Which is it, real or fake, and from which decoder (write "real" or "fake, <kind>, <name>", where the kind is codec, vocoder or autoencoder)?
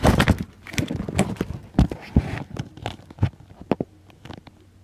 real